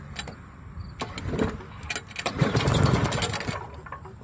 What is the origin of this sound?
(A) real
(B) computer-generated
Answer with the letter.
A